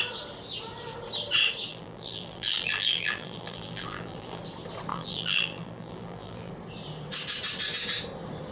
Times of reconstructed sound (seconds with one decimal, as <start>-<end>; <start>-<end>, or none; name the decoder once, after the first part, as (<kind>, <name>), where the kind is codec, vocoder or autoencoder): 1.7-4.4 (vocoder, BigVGAN v2); 4.9-6.5